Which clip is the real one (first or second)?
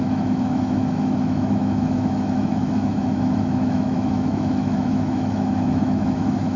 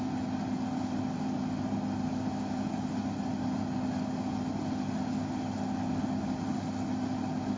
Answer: second